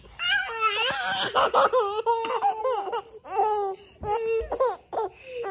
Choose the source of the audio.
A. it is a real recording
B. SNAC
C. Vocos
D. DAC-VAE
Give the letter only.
A